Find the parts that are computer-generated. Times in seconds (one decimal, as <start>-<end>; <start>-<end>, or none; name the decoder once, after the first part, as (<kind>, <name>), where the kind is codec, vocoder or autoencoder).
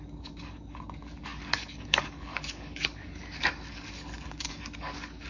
0.0-5.3 (codec, DAC)